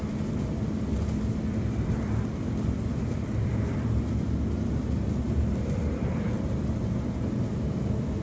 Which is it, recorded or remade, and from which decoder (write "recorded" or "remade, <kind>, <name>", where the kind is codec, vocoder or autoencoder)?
remade, vocoder, BigVGAN v2